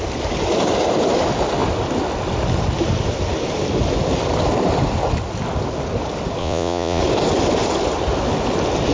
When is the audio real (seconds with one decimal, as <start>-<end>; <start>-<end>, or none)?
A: 0.0-6.4; 7.0-8.9